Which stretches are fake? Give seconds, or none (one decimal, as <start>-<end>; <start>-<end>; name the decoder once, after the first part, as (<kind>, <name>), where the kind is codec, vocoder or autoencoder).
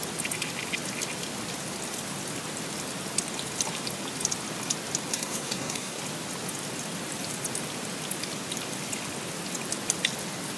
5.1-6.0 (codec, SNAC)